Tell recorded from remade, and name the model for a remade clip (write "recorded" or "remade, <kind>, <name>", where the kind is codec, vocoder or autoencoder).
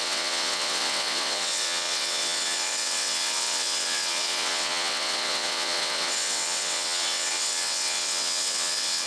remade, vocoder, WaveNeXt